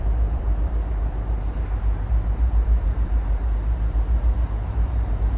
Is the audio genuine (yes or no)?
no